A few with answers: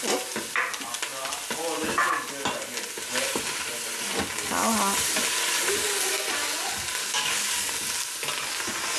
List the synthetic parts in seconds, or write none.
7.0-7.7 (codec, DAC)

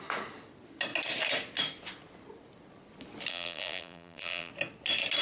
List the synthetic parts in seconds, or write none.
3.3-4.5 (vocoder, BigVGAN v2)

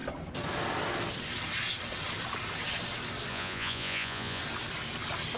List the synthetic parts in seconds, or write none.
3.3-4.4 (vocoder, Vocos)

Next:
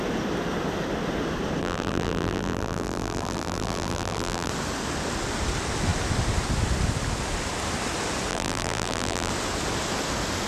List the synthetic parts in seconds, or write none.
1.6-4.5 (vocoder, BigVGAN v2); 8.3-9.3